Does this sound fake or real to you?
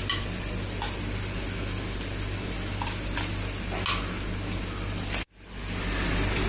real